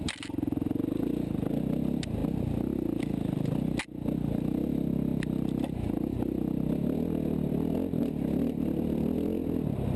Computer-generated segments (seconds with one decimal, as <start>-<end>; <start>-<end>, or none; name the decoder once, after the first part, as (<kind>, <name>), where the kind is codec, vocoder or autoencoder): none